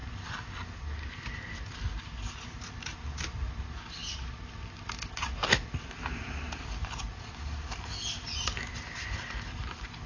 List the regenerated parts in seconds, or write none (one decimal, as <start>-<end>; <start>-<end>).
none